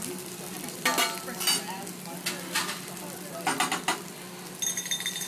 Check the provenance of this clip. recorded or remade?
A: recorded